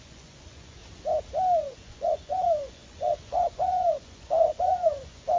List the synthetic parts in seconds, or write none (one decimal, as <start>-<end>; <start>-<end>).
0.0-0.8; 1.6-5.4